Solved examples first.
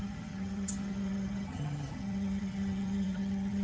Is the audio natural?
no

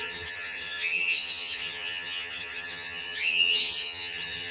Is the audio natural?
no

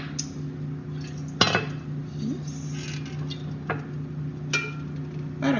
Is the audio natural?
yes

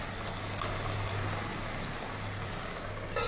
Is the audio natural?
yes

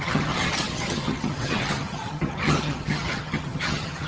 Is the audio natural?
no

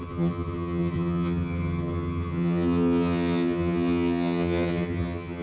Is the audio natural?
no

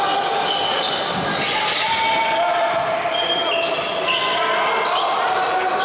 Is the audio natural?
yes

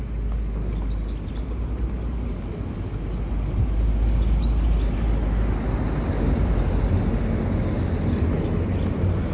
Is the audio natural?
yes